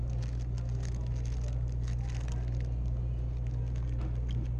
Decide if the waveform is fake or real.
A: real